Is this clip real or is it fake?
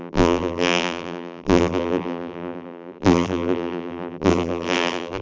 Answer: fake